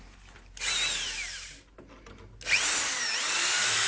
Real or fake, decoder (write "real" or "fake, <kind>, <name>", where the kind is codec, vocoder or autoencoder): real